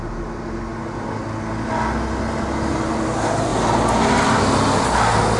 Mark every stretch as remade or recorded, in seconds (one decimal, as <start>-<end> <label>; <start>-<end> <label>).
0.0-5.4 recorded